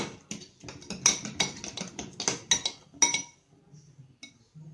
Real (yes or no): yes